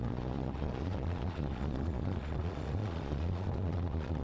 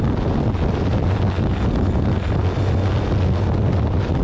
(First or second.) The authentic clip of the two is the second